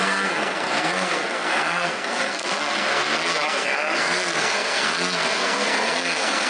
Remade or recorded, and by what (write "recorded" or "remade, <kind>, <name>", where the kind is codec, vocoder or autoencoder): remade, codec, SNAC